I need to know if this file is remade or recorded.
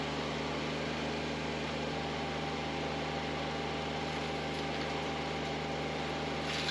recorded